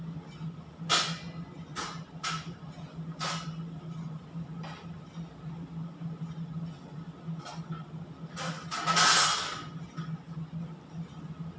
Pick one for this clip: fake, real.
real